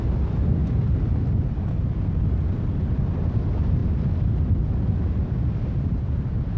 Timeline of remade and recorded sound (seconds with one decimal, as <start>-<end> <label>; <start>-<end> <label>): 0.0-6.6 recorded